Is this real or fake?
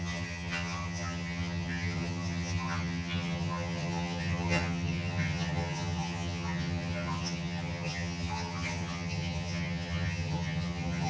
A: fake